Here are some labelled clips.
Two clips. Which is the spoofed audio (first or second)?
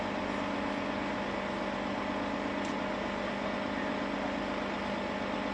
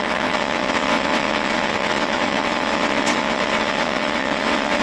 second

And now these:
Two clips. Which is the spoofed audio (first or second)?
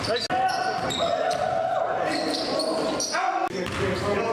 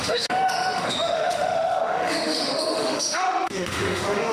second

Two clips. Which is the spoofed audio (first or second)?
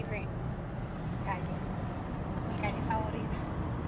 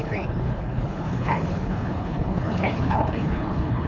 second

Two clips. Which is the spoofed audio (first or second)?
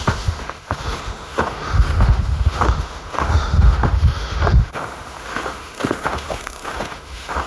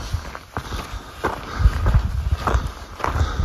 first